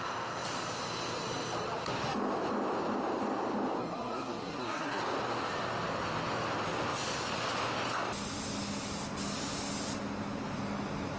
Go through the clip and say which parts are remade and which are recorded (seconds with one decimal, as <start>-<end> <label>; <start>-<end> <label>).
0.0-3.8 recorded; 3.8-5.0 remade; 5.0-11.2 recorded